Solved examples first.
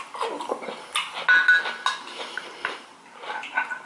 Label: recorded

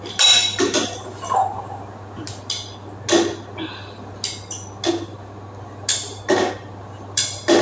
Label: recorded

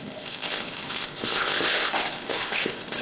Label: remade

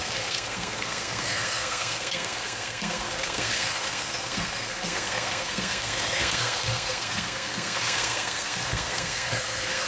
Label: remade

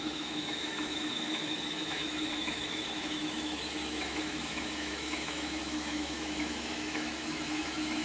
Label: remade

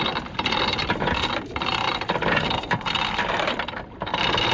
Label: recorded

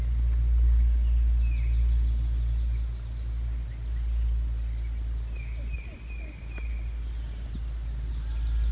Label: recorded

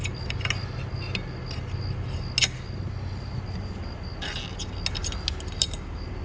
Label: recorded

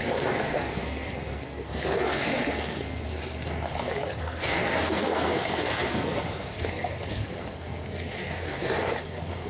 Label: remade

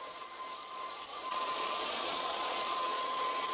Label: remade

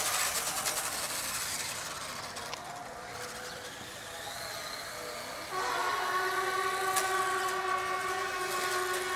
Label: recorded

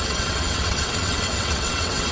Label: remade